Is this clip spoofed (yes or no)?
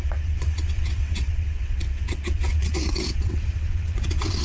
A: yes